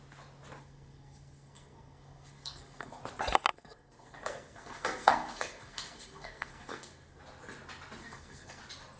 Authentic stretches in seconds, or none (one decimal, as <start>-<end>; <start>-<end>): 0.0-0.6; 3.0-3.5; 7.2-8.0; 8.6-9.0